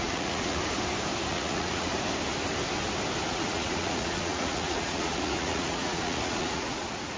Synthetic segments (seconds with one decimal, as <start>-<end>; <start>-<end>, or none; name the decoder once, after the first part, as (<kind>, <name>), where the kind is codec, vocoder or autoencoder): 0.0-0.6 (vocoder, Vocos); 1.3-1.9; 3.3-7.2

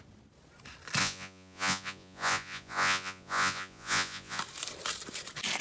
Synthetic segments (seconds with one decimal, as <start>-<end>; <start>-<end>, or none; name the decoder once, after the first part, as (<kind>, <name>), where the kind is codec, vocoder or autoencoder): 1.0-4.4 (vocoder, Vocos)

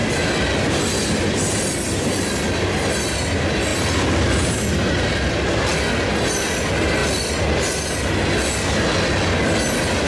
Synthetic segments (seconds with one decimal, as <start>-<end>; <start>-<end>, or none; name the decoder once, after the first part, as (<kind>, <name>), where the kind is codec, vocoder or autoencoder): none

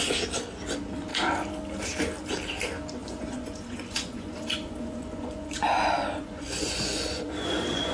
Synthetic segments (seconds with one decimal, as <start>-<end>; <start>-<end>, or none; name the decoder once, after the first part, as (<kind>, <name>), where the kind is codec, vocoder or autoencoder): 3.0-7.9 (vocoder, Vocos)

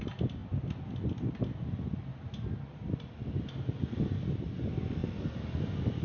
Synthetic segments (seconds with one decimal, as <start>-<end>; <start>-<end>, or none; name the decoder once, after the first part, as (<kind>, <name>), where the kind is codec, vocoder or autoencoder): none

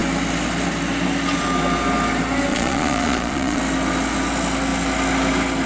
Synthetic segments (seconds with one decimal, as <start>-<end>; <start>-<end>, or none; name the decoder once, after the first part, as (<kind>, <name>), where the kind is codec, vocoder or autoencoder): 2.5-3.6 (vocoder, Vocos)

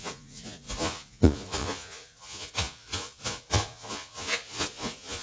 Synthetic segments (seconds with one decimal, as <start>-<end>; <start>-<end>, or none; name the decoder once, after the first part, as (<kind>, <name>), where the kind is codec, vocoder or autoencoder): 0.0-5.2 (vocoder, Vocos)